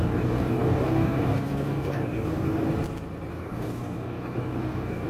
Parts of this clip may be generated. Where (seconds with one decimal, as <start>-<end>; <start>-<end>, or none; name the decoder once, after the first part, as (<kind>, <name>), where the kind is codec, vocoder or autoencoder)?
0.0-2.7 (codec, DAC); 3.3-5.1